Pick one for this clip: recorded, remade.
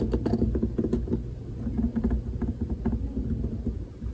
recorded